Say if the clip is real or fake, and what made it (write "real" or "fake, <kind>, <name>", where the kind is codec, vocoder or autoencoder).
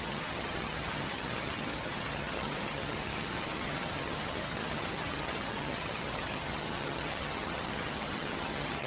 fake, vocoder, HiFi-GAN